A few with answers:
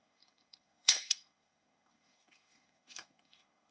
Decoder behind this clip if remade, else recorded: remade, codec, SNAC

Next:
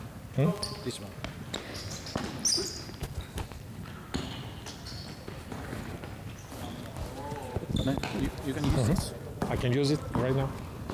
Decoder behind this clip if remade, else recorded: recorded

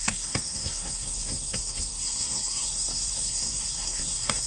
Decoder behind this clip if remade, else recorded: remade, codec, SNAC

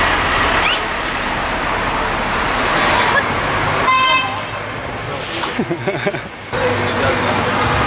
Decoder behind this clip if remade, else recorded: recorded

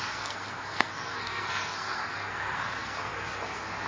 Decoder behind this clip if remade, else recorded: remade, codec, SNAC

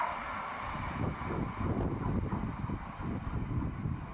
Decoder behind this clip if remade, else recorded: recorded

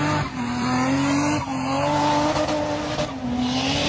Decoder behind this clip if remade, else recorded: recorded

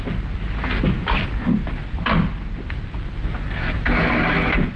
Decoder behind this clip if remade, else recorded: recorded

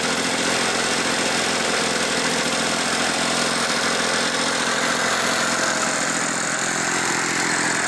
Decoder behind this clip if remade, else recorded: recorded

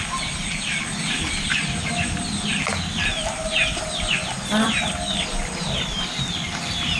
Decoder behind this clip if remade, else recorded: recorded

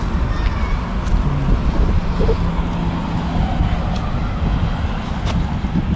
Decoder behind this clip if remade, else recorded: recorded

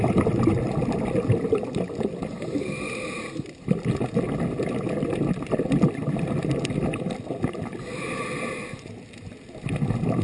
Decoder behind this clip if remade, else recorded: recorded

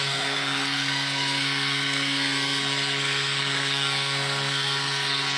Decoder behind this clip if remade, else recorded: remade, codec, SNAC